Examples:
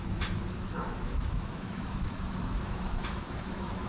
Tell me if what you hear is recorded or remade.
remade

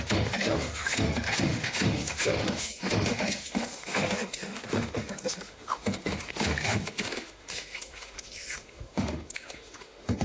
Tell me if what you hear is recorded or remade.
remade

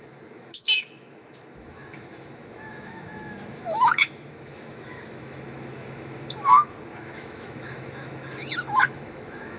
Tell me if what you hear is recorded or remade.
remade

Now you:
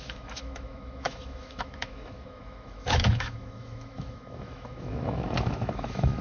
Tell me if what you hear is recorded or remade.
remade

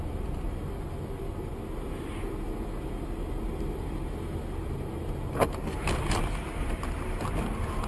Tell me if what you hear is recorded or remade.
recorded